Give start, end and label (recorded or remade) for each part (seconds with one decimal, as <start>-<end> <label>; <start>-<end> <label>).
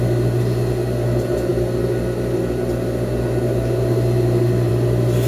0.0-5.3 recorded